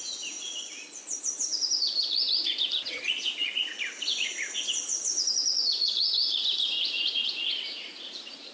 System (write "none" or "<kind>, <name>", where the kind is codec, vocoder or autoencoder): vocoder, Vocos